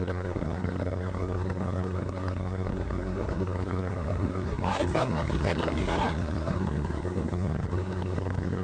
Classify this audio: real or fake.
fake